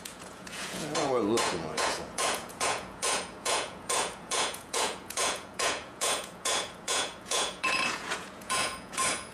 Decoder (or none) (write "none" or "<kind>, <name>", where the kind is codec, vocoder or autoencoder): vocoder, Vocos